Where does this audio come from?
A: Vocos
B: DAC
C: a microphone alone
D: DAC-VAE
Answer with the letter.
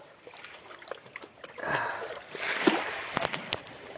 C